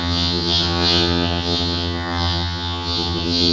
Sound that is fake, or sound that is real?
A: fake